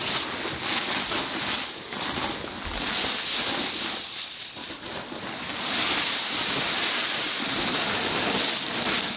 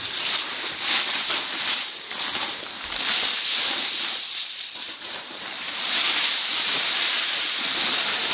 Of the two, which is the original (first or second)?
first